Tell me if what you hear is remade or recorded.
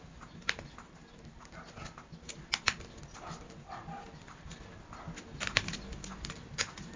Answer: recorded